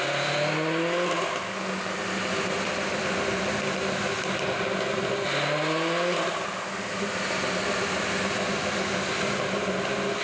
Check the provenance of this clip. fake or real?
real